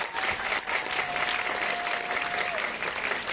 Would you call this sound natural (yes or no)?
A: yes